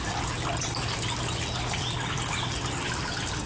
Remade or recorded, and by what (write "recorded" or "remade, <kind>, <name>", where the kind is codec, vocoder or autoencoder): recorded